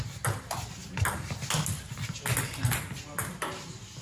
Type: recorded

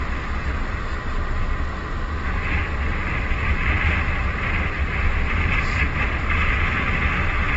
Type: recorded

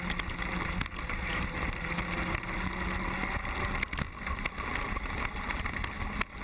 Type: recorded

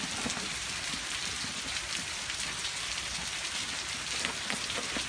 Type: recorded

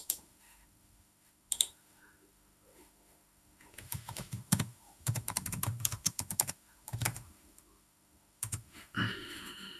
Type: remade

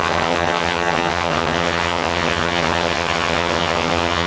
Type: remade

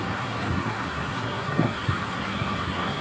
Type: remade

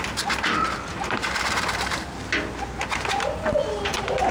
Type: remade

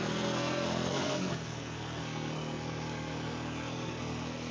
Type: remade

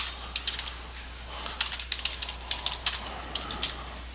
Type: recorded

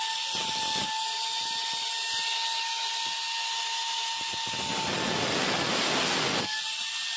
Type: recorded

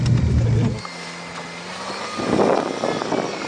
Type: recorded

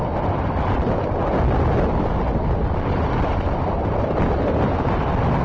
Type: recorded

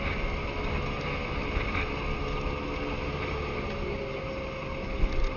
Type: recorded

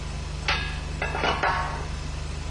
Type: recorded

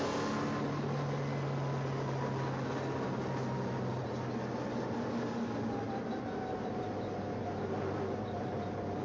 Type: recorded